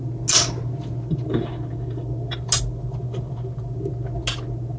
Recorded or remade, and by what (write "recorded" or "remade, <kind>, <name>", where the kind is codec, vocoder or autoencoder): recorded